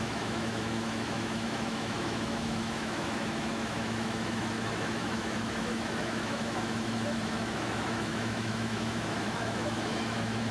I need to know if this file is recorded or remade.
remade